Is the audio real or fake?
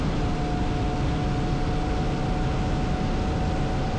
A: real